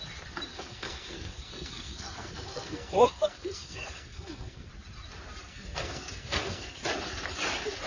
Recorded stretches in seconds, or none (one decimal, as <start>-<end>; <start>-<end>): 0.0-0.5; 4.7-5.4; 6.8-7.9